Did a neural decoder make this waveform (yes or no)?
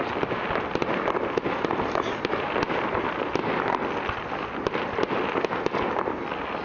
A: no